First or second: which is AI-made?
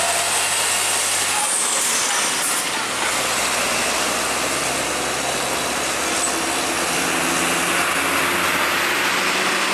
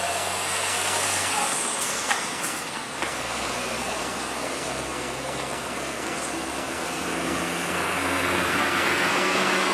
second